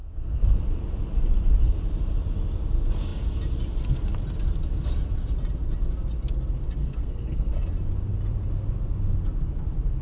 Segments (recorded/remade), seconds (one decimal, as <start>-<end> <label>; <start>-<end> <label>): 0.0-0.6 remade; 0.6-6.8 recorded; 6.8-7.5 remade; 7.5-10.0 recorded